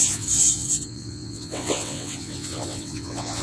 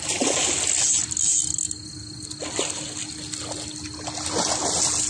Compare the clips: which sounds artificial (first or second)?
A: first